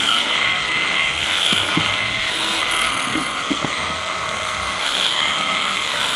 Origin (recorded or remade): remade